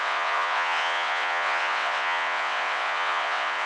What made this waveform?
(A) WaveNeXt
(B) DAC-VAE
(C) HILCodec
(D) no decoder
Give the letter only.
A